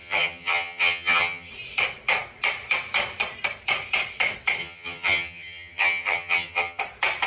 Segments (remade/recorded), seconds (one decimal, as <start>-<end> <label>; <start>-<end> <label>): 0.0-1.5 remade; 1.5-4.6 recorded; 4.6-6.8 remade; 6.8-7.3 recorded